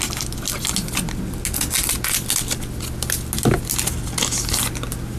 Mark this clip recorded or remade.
recorded